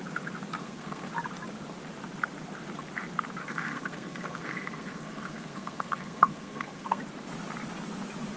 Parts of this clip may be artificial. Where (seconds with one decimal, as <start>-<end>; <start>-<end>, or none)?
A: 0.6-1.1; 3.4-7.0